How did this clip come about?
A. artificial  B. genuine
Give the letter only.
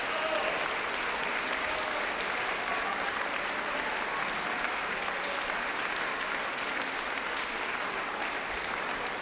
B